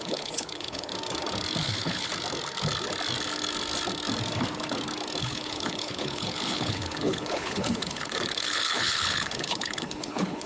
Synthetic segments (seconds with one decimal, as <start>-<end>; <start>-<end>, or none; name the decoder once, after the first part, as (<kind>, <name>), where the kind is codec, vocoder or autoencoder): 0.0-0.9 (codec, HILCodec); 1.6-2.1; 5.2-10.5